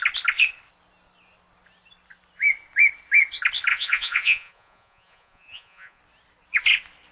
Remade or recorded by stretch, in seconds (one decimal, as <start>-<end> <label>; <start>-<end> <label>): 0.0-3.7 recorded; 3.7-6.0 remade; 6.0-7.1 recorded